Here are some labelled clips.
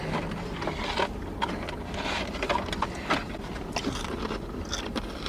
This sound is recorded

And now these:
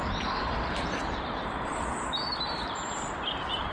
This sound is remade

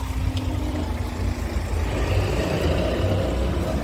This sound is recorded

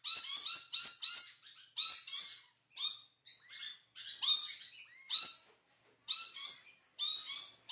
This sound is recorded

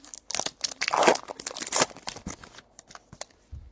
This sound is recorded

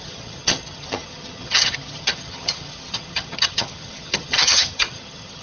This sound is remade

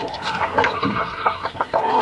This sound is remade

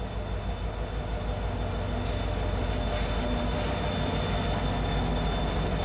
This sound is recorded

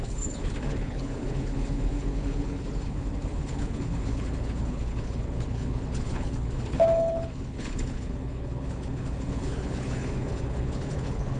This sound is remade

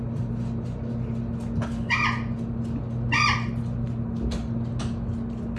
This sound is recorded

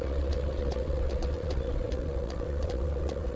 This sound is remade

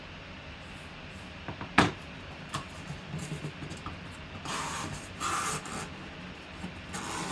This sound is recorded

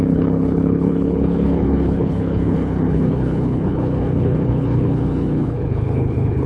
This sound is remade